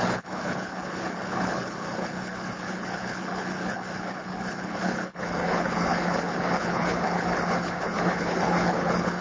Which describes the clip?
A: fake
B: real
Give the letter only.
A